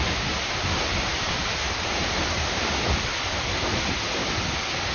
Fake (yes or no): no